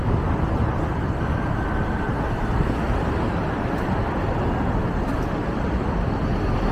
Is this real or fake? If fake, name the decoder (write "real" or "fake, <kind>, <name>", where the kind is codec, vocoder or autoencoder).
real